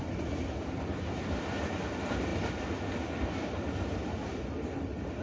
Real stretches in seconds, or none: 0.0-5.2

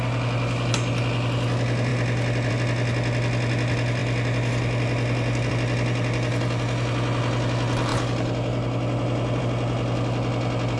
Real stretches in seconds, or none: 0.0-10.8

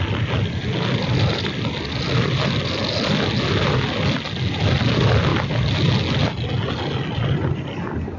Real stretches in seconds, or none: 0.0-8.2

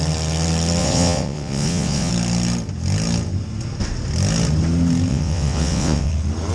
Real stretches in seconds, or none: 0.0-0.8; 2.1-5.1; 6.1-6.5

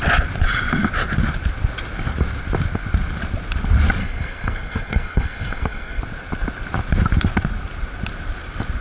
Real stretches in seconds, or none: 0.0-4.0; 6.0-8.8

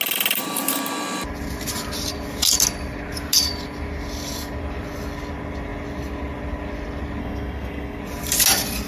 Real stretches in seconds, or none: 0.0-7.2; 8.0-8.9

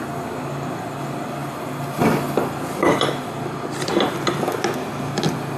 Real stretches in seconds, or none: 0.0-5.6